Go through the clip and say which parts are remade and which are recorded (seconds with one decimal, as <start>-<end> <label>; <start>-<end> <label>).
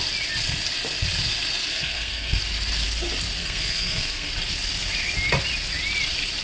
0.0-1.7 recorded; 1.7-2.4 remade; 2.4-3.4 recorded; 3.4-4.3 remade; 4.3-6.4 recorded